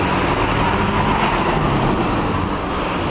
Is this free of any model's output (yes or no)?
yes